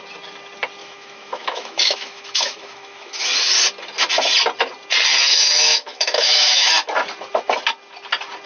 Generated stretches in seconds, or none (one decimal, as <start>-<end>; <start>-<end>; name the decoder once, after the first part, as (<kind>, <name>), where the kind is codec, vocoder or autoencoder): 0.8-3.2 (autoencoder, DAC-VAE); 5.3-6.7